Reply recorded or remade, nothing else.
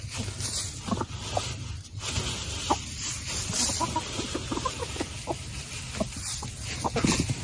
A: recorded